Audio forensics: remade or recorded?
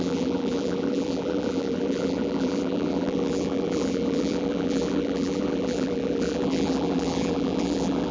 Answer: remade